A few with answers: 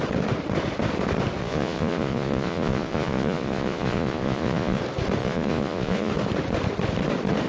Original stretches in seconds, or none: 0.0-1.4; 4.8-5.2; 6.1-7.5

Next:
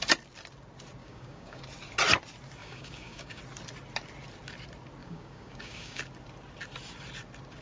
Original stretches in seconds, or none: 0.0-1.0; 1.6-2.6; 3.4-5.0; 6.0-7.6